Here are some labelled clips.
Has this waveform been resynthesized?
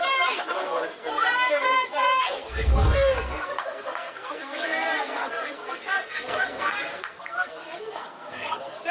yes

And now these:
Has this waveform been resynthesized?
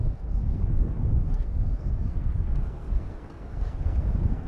yes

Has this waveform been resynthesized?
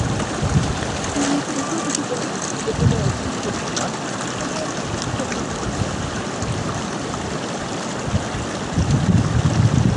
no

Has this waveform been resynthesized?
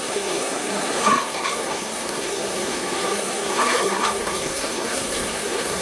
yes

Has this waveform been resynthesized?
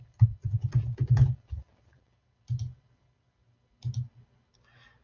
no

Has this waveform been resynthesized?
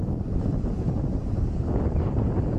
no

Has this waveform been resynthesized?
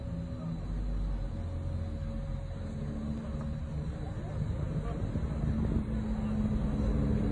no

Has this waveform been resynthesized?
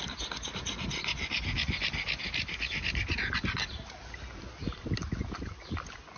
no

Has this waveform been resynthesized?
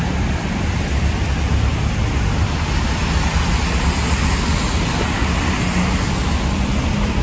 no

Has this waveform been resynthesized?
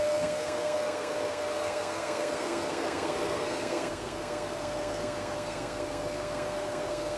yes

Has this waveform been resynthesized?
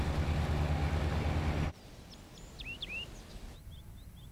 no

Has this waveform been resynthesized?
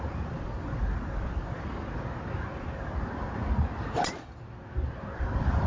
no